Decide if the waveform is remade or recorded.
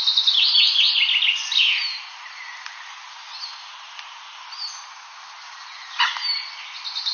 recorded